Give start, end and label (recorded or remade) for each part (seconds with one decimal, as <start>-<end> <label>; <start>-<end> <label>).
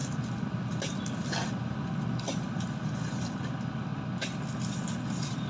0.0-5.5 recorded